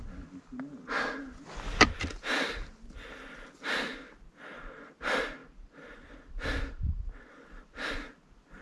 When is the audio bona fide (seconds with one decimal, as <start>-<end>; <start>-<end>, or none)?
0.0-1.7; 2.6-5.4; 7.9-8.6